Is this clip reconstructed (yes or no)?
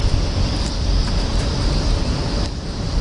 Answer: yes